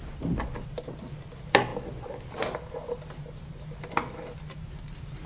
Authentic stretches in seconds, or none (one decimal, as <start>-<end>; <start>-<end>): 0.0-5.3

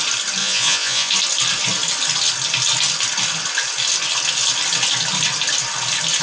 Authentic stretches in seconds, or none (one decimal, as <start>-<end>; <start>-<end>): 0.0-0.4; 1.1-6.2

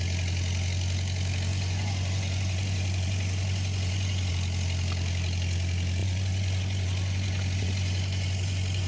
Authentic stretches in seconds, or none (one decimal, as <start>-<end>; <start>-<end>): 0.0-1.5; 4.3-6.0